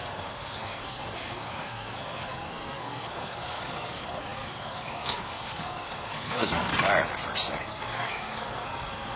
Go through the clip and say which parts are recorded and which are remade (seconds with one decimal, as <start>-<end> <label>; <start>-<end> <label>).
0.0-6.7 remade; 6.7-7.6 recorded; 7.6-9.2 remade